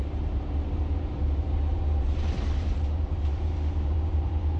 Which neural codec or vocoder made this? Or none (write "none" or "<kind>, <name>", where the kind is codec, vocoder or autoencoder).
vocoder, BigVGAN v2